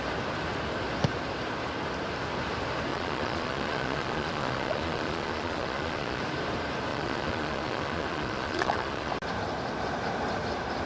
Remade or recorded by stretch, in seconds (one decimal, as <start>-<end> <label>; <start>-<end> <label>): 0.0-2.9 recorded; 2.9-6.2 remade; 6.2-6.9 recorded; 6.9-9.1 remade; 9.1-10.9 recorded

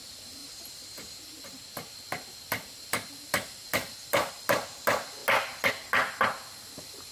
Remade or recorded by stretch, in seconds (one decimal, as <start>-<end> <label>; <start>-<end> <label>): 0.0-7.1 recorded